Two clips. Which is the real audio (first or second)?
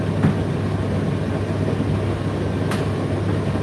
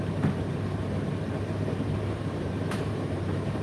first